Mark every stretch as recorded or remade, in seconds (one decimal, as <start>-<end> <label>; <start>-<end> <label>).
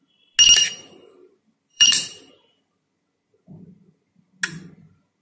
0.0-1.7 recorded; 1.7-2.3 remade; 2.3-5.2 recorded